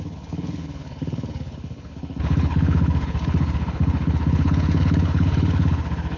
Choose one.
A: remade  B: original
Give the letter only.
A